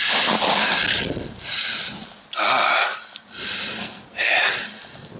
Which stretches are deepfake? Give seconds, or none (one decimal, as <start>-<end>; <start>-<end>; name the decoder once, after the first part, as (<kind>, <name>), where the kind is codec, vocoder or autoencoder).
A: 3.8-4.3 (codec, SNAC)